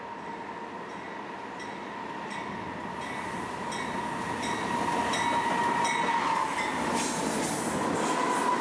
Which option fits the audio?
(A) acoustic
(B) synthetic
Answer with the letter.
A